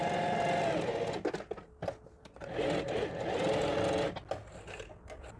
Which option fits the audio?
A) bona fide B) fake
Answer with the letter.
A